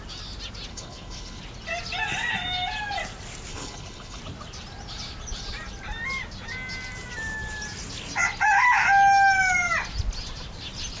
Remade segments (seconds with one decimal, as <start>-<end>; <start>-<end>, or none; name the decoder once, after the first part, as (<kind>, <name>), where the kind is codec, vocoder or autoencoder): 0.7-1.4 (codec, HILCodec); 3.5-4.2